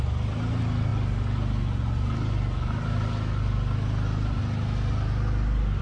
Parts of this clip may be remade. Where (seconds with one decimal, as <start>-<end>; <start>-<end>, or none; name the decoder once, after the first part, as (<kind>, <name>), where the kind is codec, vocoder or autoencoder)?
none

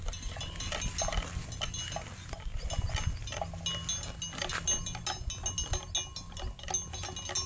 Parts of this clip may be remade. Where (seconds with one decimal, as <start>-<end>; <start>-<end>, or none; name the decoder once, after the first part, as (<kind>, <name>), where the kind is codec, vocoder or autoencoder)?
none

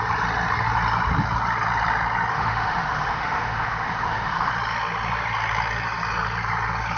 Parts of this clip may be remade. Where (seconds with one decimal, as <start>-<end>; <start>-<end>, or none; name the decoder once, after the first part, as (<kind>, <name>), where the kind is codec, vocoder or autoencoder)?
2.3-4.5 (autoencoder, DAC-VAE)

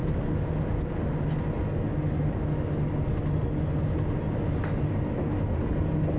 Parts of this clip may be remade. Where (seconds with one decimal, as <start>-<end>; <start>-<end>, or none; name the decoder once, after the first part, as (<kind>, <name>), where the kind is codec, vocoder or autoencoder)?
none

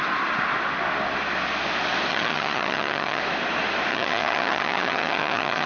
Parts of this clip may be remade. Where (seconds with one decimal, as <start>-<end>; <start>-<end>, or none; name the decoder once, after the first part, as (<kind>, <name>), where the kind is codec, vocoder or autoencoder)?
2.1-3.2 (vocoder, HiFi-GAN); 3.9-5.7

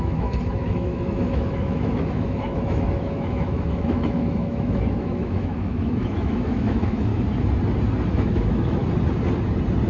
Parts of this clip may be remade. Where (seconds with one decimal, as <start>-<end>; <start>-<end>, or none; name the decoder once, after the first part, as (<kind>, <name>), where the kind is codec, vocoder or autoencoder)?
0.0-7.1 (autoencoder, DAC-VAE); 8.1-8.8